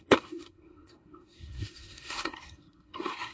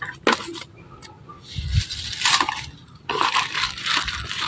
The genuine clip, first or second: second